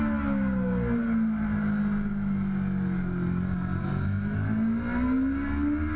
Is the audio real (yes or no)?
yes